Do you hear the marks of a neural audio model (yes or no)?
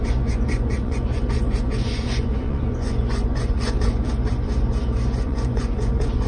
yes